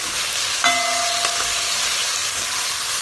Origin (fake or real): real